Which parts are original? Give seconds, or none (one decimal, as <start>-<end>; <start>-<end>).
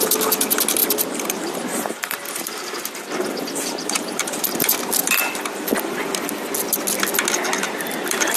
0.0-0.8; 5.2-8.4